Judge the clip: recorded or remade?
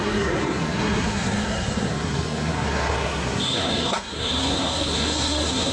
remade